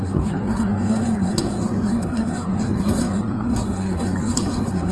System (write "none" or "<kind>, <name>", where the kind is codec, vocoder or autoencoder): codec, SNAC